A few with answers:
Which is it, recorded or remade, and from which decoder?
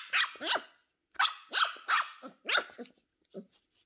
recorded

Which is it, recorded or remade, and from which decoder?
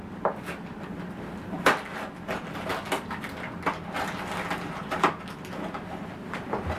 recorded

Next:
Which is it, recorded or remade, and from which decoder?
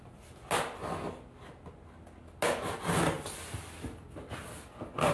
recorded